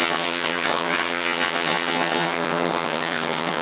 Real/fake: fake